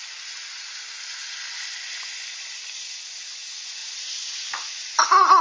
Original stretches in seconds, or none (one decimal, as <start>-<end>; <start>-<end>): 0.0-5.4